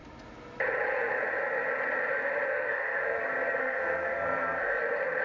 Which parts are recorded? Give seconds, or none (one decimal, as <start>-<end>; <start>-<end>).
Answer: 0.0-2.5; 3.2-3.6; 4.8-5.2